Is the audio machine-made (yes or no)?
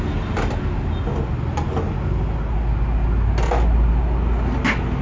no